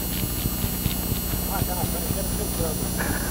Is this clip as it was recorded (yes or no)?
yes